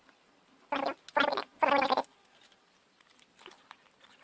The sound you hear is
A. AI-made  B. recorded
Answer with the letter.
B